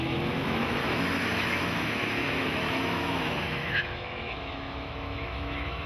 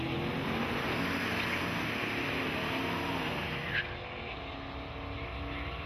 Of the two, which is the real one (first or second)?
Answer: second